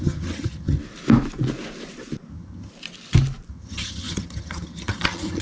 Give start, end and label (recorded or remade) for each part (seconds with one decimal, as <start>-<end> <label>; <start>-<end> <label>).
0.0-0.8 remade; 0.8-2.3 recorded; 2.3-2.7 remade; 2.7-3.5 recorded; 3.5-5.4 remade